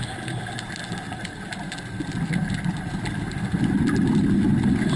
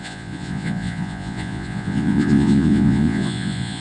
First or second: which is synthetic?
second